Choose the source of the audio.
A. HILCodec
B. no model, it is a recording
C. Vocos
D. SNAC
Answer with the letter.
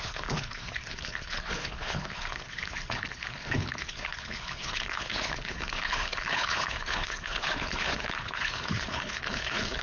A